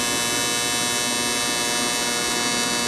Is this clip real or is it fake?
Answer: real